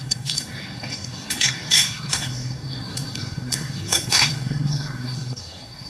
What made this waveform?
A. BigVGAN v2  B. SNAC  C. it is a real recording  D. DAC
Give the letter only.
B